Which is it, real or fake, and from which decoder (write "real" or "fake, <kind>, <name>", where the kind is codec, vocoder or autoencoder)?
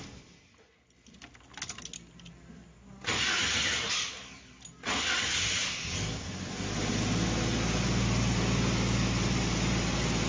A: real